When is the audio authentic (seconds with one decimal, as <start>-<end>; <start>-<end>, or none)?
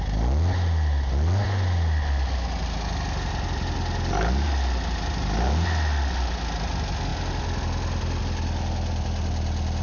0.0-9.8